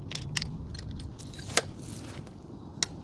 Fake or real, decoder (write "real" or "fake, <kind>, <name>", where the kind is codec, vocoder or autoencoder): real